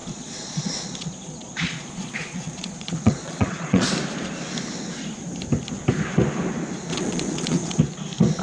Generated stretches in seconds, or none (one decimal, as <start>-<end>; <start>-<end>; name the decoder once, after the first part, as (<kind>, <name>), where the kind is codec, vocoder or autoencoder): 0.0-3.9 (vocoder, Vocos); 6.9-7.8